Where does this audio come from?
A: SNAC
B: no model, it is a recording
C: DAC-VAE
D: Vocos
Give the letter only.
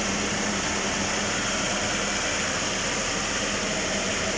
B